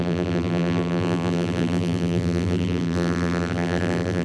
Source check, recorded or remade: remade